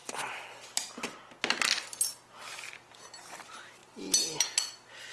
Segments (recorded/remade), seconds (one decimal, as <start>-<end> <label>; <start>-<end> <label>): 0.0-5.1 recorded